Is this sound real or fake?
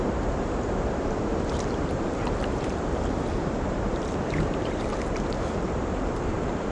fake